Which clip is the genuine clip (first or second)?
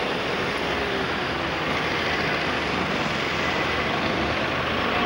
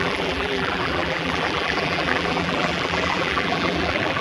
first